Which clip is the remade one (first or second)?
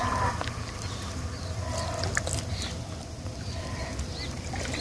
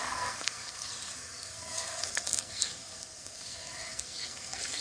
second